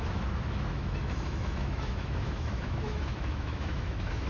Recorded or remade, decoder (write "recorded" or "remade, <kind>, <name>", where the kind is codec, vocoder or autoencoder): remade, autoencoder, DAC-VAE